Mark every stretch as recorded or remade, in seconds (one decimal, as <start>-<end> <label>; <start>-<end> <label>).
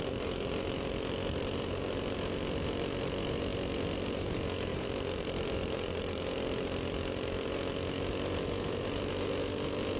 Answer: 0.0-10.0 recorded